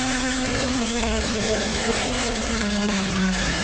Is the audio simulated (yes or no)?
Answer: yes